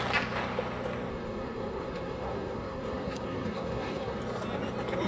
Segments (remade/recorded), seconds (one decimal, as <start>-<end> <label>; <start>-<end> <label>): 0.0-1.1 recorded; 1.1-4.2 remade; 4.2-5.1 recorded